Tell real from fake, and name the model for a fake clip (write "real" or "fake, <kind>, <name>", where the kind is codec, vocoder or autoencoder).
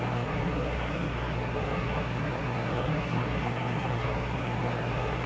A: fake, codec, SNAC